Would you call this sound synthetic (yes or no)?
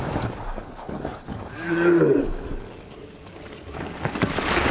yes